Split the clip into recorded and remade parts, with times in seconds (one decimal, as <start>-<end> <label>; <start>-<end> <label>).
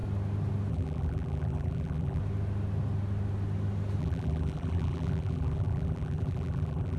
0.0-0.7 recorded; 0.7-2.2 remade; 2.2-4.0 recorded; 4.0-7.0 remade